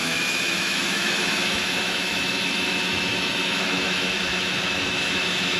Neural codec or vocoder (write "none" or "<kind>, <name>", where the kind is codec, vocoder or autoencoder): autoencoder, DAC-VAE